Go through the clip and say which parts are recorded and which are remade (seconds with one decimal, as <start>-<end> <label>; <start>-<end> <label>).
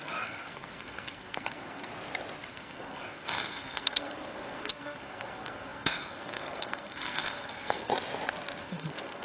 0.0-1.9 remade; 1.9-2.5 recorded; 2.5-7.9 remade; 7.9-8.6 recorded; 8.6-9.2 remade